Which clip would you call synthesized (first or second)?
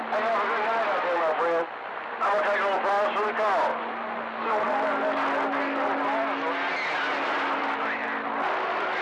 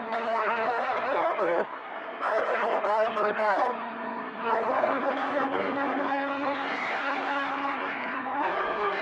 second